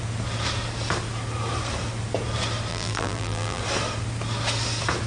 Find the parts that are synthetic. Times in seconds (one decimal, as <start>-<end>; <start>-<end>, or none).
2.7-3.6